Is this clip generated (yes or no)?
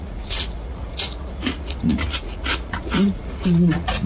yes